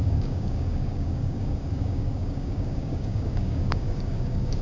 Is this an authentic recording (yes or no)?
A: no